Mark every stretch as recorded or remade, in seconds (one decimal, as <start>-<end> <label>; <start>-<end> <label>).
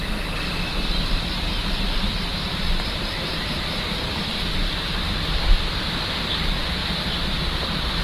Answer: 0.0-8.0 recorded